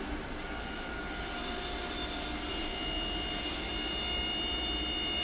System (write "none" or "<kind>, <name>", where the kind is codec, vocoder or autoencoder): none